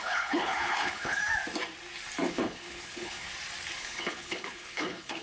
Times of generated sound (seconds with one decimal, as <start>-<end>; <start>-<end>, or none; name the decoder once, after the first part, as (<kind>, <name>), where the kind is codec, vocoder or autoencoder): 0.0-1.2 (codec, HILCodec); 2.3-3.3; 3.8-5.2